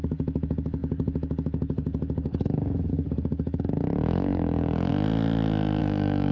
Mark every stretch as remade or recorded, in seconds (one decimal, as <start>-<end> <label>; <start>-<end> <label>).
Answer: 0.0-4.9 remade; 4.9-5.8 recorded; 5.8-6.3 remade